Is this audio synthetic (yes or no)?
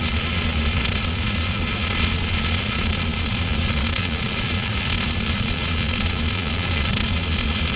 yes